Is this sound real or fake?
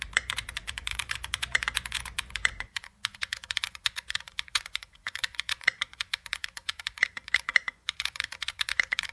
fake